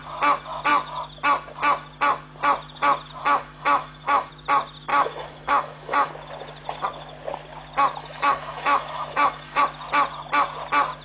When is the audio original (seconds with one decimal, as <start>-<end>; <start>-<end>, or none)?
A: 0.0-3.2; 4.3-4.9; 6.1-8.0; 9.6-11.0